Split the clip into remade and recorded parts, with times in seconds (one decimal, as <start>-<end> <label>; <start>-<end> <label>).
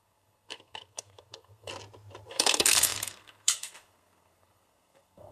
0.0-1.7 remade; 1.7-2.3 recorded; 2.3-5.3 remade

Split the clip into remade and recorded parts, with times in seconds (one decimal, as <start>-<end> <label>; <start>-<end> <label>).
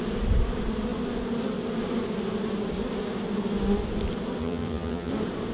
0.0-4.4 recorded; 4.4-5.1 remade; 5.1-5.5 recorded